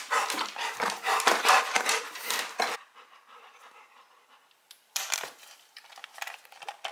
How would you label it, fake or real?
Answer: fake